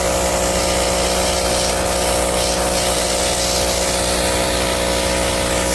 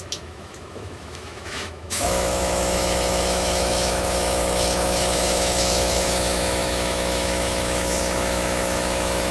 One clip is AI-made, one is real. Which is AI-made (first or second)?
second